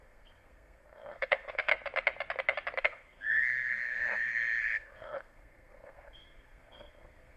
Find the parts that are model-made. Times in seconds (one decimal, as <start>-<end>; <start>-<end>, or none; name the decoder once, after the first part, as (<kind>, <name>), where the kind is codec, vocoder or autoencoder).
0.0-1.7 (codec, SNAC); 2.8-7.4

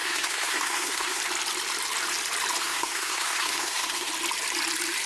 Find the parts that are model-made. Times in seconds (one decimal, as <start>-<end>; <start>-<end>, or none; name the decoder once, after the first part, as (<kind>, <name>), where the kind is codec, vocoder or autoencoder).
0.0-1.2 (codec, SNAC); 2.6-4.1

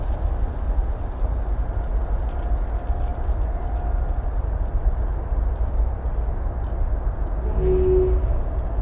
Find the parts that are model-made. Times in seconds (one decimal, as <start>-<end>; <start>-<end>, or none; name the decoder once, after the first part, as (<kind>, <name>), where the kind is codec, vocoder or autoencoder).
none

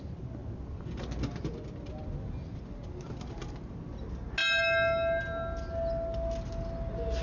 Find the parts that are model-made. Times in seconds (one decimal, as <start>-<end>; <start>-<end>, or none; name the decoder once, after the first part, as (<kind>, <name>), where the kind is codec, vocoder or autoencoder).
none

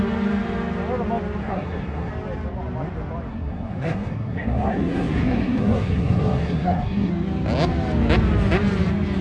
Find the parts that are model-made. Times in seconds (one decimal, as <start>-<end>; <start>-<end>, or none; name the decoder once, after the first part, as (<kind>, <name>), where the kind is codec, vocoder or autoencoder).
1.4-2.1 (codec, SNAC); 3.3-7.1